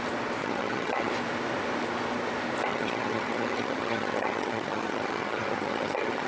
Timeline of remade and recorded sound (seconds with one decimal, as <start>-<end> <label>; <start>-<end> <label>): 0.0-0.4 recorded; 0.4-1.1 remade; 1.1-2.7 recorded; 2.7-6.3 remade